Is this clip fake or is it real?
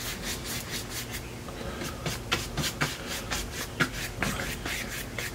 real